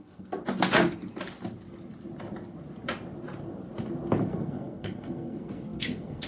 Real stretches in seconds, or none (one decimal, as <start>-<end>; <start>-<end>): 0.4-4.2